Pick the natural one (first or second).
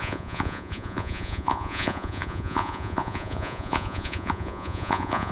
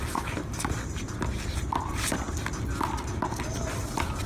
second